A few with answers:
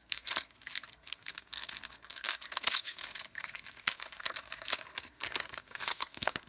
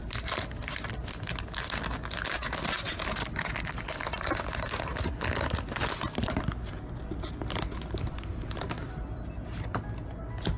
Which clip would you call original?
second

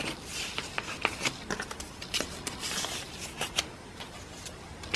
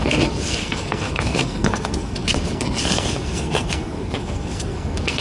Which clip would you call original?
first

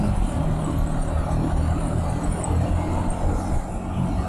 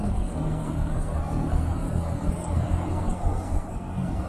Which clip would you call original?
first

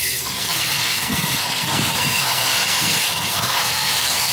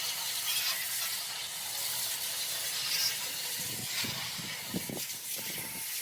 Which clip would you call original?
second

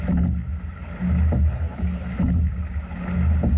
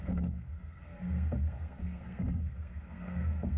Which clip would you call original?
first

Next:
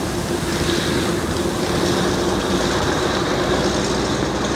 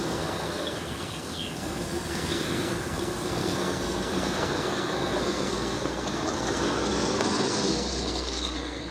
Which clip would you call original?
first